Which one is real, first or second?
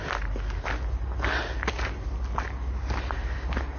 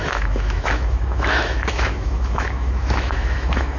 first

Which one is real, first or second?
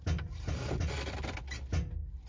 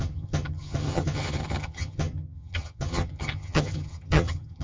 first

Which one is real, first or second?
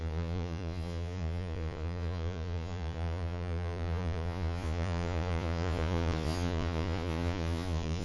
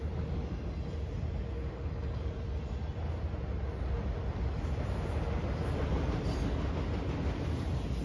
second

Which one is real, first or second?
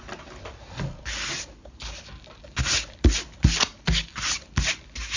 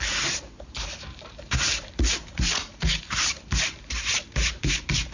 first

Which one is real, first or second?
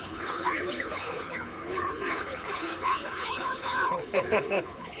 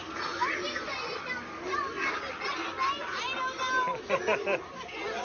second